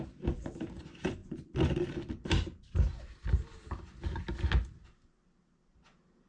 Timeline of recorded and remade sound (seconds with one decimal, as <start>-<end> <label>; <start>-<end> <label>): 0.0-6.3 recorded